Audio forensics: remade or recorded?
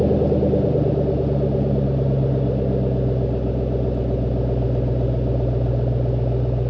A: recorded